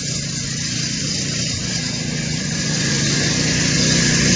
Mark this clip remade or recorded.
remade